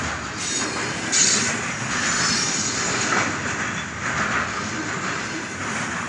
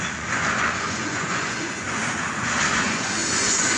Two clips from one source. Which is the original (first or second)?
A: first